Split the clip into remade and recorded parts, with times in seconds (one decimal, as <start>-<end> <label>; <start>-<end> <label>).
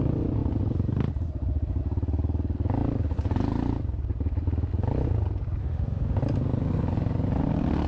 0.0-5.6 recorded; 5.6-6.2 remade; 6.2-7.9 recorded